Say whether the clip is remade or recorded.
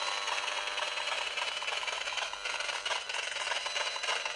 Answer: recorded